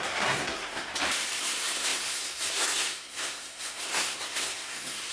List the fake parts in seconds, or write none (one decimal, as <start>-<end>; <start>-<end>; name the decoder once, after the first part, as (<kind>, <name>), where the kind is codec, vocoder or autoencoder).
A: 0.0-0.9 (codec, SNAC); 1.4-5.1